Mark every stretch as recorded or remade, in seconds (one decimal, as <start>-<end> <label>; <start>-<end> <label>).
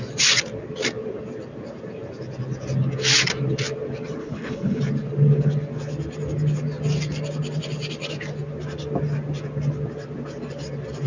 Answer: 0.0-4.2 recorded; 4.2-4.8 remade; 4.8-11.1 recorded